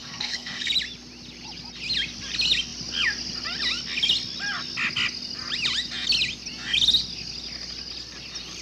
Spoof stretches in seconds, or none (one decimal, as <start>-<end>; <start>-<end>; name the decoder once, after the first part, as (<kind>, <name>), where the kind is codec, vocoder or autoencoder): 0.0-0.7 (codec, SNAC)